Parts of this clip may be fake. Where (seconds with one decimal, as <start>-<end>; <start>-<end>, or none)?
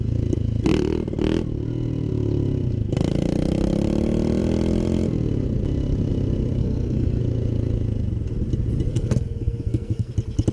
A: 6.6-7.2; 8.9-10.1